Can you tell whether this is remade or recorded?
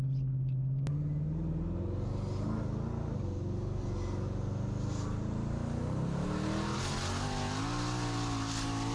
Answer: recorded